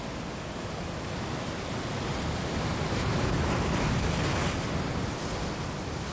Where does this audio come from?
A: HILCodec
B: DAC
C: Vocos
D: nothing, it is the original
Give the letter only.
D